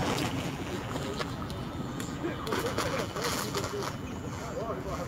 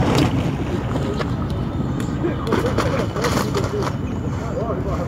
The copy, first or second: first